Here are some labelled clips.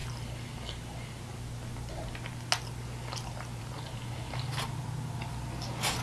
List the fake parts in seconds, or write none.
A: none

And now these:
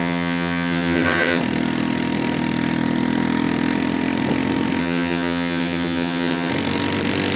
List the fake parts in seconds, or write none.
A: 0.0-1.4 (vocoder, HiFi-GAN); 4.8-6.5

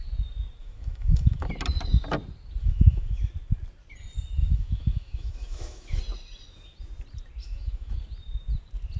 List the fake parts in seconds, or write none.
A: 0.6-1.5 (autoencoder, DAC-VAE); 2.6-3.3; 4.4-6.0; 7.4-7.9

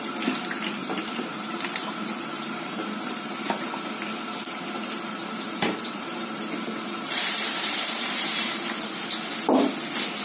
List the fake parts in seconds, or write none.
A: 0.8-3.0 (vocoder, BigVGAN v2); 5.2-9.0

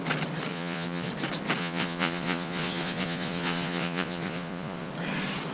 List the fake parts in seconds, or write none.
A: 0.5-1.1 (vocoder, Vocos); 1.6-4.9

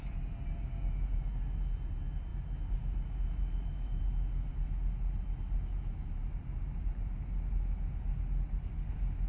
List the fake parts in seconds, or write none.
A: none

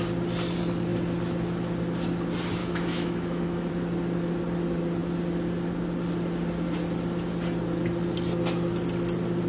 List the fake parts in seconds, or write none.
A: 2.6-3.7 (autoencoder, DAC-VAE)

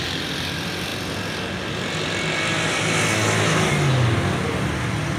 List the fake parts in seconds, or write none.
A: none